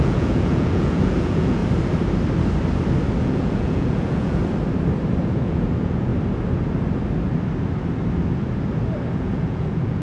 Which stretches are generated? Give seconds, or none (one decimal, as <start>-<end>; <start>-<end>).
0.0-1.6; 3.2-4.4; 5.2-6.1; 9.1-10.0